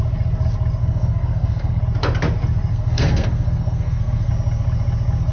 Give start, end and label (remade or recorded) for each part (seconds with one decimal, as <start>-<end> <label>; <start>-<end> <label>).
0.0-0.8 recorded; 0.8-1.8 remade; 1.8-2.7 recorded; 2.7-4.3 remade; 4.3-5.3 recorded